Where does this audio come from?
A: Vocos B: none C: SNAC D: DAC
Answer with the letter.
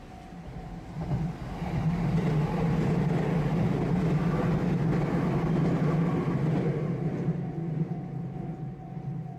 B